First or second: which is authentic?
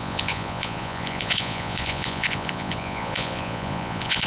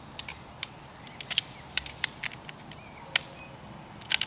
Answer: second